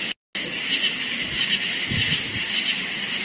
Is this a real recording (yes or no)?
yes